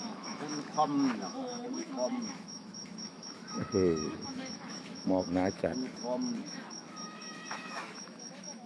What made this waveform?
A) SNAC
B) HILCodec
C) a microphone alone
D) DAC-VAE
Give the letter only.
D